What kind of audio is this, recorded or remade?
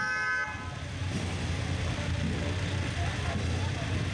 recorded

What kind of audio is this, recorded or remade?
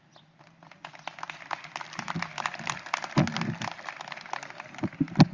recorded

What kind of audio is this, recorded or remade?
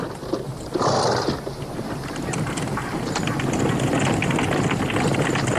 recorded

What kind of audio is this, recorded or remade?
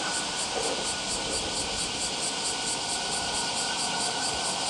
recorded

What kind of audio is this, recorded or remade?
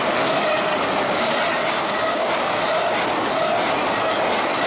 recorded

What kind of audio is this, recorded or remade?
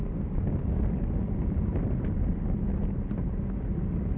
recorded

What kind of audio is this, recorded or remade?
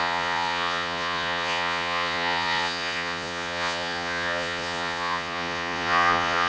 remade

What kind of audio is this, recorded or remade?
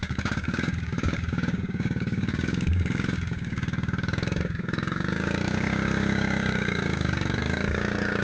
remade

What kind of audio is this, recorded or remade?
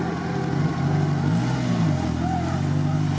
recorded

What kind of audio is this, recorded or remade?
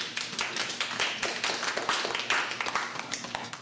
recorded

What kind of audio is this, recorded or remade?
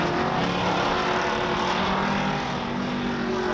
recorded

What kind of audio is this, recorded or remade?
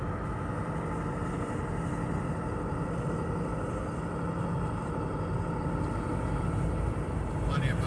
recorded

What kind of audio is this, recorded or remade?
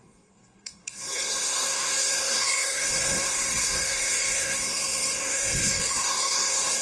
remade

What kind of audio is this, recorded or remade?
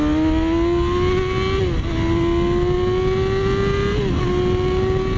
recorded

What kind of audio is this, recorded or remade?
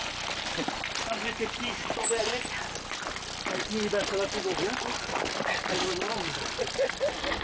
recorded